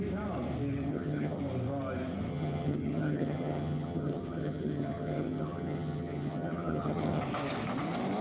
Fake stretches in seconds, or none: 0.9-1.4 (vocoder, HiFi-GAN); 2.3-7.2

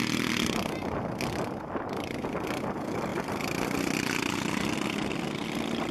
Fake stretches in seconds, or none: none

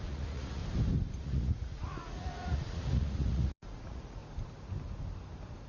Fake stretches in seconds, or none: 0.0-0.6 (vocoder, Vocos); 1.2-4.2

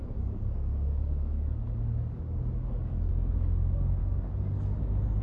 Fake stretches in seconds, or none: 0.0-3.1 (codec, DAC); 4.0-4.8

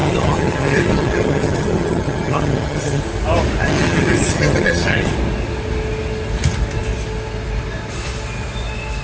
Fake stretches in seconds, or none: 0.0-3.0 (vocoder, HiFi-GAN); 3.6-5.1

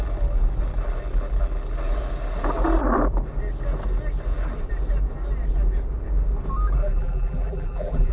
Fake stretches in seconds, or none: 6.8-8.1 (vocoder, BigVGAN v2)

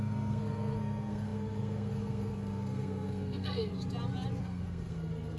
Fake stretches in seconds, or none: 0.0-3.7 (codec, SNAC); 4.4-5.4